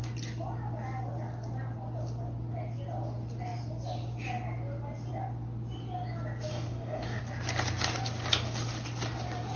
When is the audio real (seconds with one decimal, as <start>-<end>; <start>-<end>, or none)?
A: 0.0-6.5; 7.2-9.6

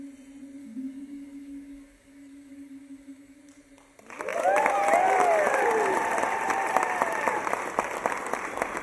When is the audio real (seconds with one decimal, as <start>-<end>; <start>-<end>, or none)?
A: 0.0-0.6; 3.4-8.8

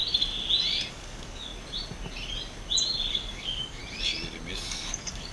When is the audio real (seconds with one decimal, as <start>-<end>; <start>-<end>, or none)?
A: 0.0-0.9; 1.5-3.1; 3.8-4.5

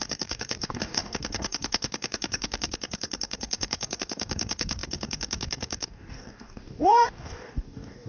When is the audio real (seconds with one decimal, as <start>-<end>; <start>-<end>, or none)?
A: none

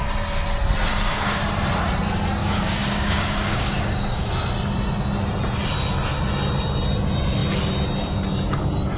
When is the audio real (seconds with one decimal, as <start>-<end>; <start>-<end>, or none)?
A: 0.0-0.9; 1.4-2.4; 4.3-9.0